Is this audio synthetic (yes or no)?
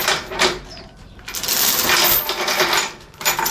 no